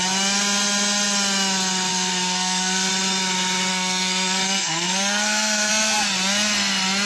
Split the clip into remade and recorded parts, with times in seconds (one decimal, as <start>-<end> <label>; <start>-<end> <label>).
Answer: 0.0-1.9 recorded; 1.9-2.9 remade; 2.9-3.7 recorded; 3.7-5.7 remade; 5.7-7.1 recorded